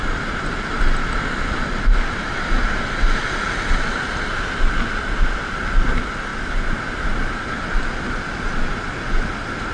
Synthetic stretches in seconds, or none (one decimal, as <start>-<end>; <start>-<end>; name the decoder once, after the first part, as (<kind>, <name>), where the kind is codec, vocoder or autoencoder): none